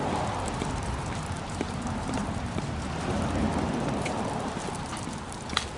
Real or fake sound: fake